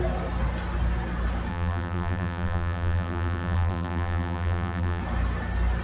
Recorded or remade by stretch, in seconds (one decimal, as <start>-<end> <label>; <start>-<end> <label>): 0.0-1.5 recorded; 1.5-5.0 remade; 5.0-5.8 recorded